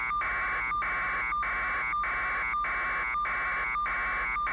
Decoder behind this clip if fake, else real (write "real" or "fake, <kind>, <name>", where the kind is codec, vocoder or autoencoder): real